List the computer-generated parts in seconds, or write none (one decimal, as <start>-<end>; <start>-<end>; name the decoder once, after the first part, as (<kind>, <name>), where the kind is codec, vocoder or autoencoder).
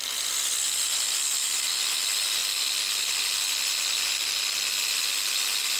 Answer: none